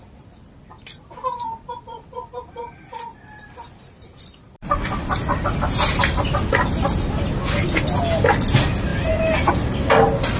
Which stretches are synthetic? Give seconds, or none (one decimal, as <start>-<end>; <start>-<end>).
none